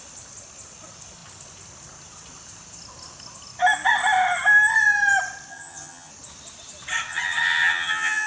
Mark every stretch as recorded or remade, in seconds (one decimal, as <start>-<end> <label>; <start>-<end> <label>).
0.0-5.5 recorded; 5.5-6.1 remade; 6.1-7.1 recorded; 7.1-8.3 remade